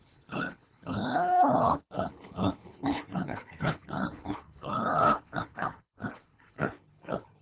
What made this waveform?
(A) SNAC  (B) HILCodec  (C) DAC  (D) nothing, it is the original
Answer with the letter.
B